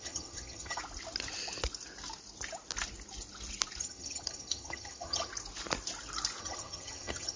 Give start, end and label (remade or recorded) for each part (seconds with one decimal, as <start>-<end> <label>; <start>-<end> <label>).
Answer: 0.0-0.8 remade; 0.8-3.8 recorded; 3.8-5.3 remade; 5.3-6.4 recorded; 6.4-7.4 remade